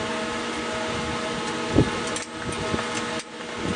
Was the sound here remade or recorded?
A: recorded